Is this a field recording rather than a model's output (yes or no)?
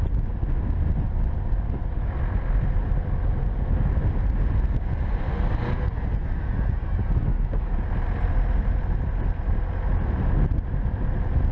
yes